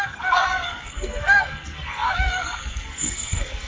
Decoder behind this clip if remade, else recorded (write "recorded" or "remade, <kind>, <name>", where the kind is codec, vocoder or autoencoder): remade, codec, SNAC